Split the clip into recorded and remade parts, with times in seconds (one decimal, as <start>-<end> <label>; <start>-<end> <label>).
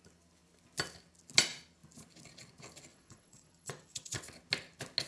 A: 0.0-2.9 recorded; 2.9-4.2 remade; 4.2-5.1 recorded